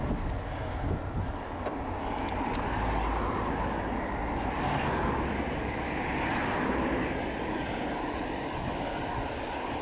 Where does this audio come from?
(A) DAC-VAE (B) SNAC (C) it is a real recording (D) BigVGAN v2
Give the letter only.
C